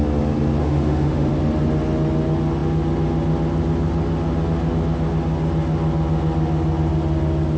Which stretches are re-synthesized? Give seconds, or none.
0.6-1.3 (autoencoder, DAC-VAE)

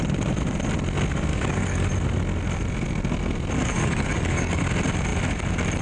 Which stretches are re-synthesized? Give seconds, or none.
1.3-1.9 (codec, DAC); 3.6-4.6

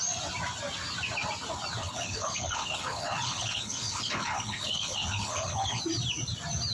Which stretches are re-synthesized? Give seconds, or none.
1.8-5.8 (codec, HILCodec)